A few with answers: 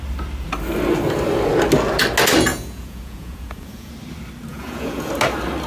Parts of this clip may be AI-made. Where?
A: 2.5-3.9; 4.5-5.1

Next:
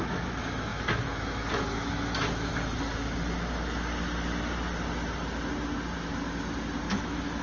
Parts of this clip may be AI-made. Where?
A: 0.0-2.5; 6.9-7.4

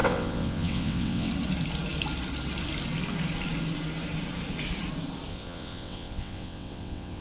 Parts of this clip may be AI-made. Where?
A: 0.0-1.3; 5.3-7.2

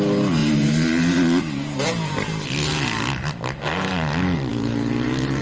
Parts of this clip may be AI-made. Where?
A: none